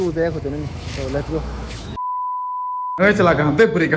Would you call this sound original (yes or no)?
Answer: no